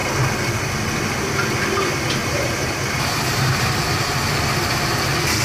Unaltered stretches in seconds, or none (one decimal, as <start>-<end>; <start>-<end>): 0.0-2.2; 3.7-5.4